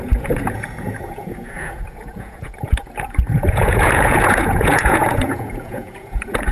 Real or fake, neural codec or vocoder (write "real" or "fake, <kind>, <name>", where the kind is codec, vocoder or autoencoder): fake, vocoder, Vocos